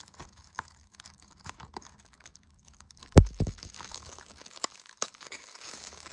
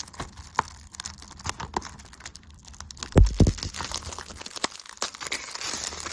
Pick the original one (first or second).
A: second